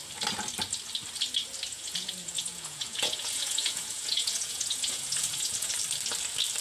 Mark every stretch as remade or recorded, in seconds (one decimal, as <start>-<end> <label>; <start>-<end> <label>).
0.0-1.7 recorded; 1.7-5.7 remade; 5.7-6.6 recorded